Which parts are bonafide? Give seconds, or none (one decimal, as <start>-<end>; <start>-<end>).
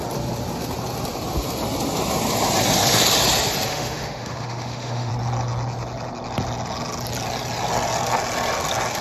0.0-3.7; 5.1-9.0